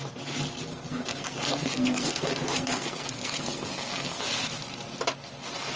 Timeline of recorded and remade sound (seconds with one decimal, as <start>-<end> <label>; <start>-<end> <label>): 0.0-0.7 recorded; 0.7-4.2 remade; 4.2-5.8 recorded